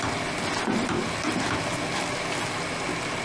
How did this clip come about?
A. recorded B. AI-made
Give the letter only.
A